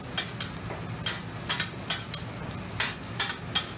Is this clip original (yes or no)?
yes